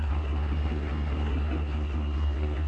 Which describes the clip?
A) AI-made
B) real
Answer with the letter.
A